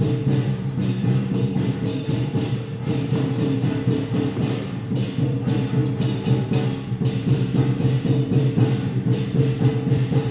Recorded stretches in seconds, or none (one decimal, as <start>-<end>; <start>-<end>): 5.8-7.2